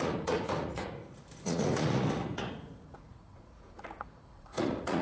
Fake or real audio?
fake